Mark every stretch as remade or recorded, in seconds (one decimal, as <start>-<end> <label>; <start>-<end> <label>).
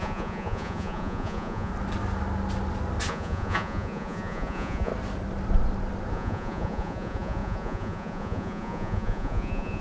0.0-1.7 remade; 1.7-3.1 recorded; 3.1-4.9 remade; 4.9-6.1 recorded; 6.1-9.8 remade